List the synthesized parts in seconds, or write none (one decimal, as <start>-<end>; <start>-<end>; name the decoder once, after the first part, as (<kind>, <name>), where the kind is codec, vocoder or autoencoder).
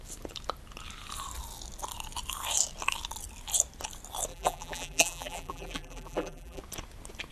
4.3-6.6 (vocoder, BigVGAN v2)